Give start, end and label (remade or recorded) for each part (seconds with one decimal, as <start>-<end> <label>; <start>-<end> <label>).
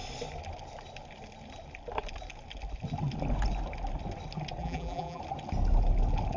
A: 0.0-4.6 recorded; 4.6-5.2 remade; 5.2-6.4 recorded